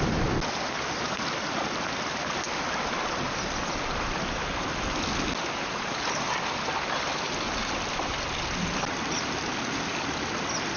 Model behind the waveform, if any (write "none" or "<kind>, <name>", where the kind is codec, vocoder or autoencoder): none